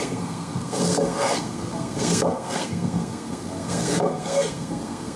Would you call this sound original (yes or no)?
no